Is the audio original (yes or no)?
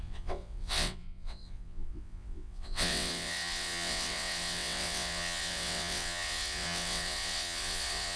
no